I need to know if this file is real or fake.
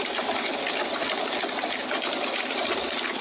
real